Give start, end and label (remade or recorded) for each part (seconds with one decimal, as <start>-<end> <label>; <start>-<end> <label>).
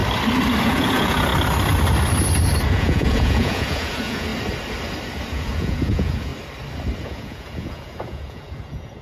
0.0-0.6 recorded; 0.6-1.3 remade; 1.3-2.7 recorded; 2.7-4.3 remade; 4.3-5.3 recorded; 5.3-6.3 remade; 6.3-7.0 recorded; 7.0-9.0 remade